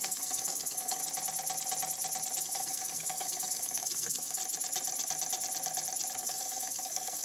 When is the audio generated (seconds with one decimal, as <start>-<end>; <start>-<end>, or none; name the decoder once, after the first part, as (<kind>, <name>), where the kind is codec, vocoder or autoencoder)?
0.0-1.0 (codec, SNAC); 2.4-4.4; 6.2-7.2